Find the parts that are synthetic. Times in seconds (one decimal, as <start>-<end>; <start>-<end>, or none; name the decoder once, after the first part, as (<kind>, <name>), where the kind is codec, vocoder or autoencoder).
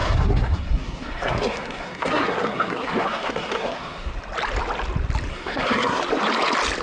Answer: 0.0-4.1 (codec, SNAC); 5.3-6.0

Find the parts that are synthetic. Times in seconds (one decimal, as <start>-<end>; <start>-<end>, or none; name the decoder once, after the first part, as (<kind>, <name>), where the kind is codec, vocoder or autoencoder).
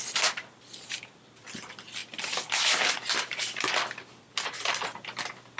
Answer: 0.0-5.6 (vocoder, BigVGAN v2)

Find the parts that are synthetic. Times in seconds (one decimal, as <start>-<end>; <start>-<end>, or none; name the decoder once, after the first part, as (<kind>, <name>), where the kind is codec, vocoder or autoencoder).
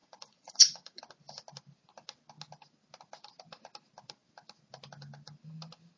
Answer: 0.0-1.0 (vocoder, Vocos)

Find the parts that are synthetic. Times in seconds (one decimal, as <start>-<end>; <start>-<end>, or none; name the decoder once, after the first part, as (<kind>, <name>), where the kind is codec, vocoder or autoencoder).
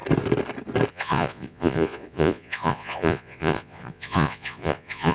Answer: 0.9-5.1 (vocoder, Vocos)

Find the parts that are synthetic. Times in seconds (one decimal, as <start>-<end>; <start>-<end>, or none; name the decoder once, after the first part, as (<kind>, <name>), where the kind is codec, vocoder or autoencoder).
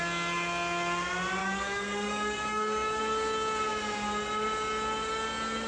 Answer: 1.4-3.0 (codec, DAC)